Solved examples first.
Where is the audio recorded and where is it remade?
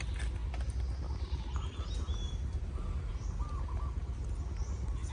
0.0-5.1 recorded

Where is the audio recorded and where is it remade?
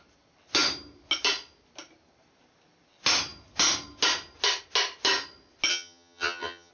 0.0-5.7 recorded; 5.7-6.7 remade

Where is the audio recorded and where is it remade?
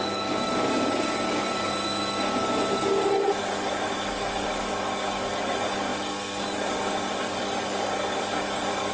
0.0-8.9 remade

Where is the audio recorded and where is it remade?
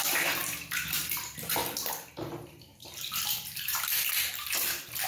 0.0-0.4 remade; 0.4-1.0 recorded; 1.0-1.6 remade; 1.6-2.1 recorded; 2.1-5.1 remade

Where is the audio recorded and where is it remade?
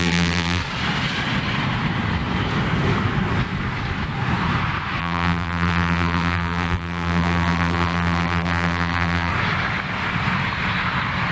0.0-0.6 remade; 0.6-5.0 recorded; 5.0-9.3 remade; 9.3-11.3 recorded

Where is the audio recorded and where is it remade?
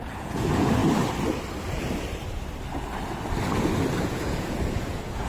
0.0-0.8 remade; 0.8-4.0 recorded; 4.0-5.3 remade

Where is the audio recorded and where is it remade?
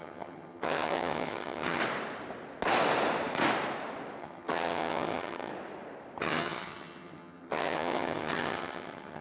0.0-1.8 remade; 1.8-4.2 recorded; 4.2-5.5 remade; 5.5-6.2 recorded; 6.2-9.2 remade